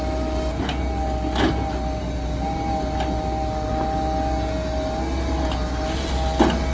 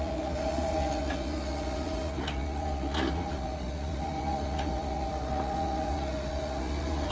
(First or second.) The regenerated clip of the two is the second